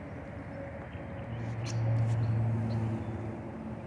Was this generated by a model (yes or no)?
no